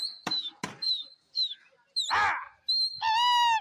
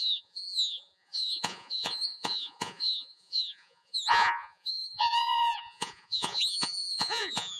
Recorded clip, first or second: first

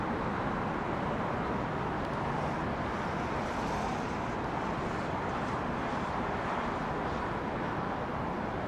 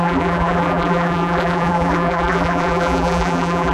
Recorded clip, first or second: first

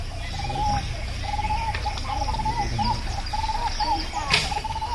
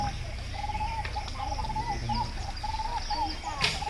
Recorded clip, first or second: second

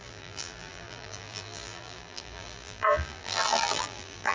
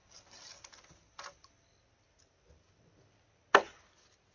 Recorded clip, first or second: second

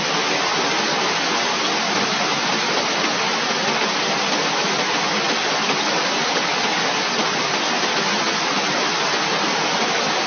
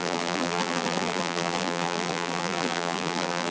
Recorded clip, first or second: first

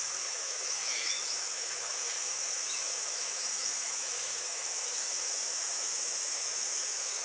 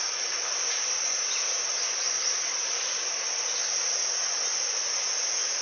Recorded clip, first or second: second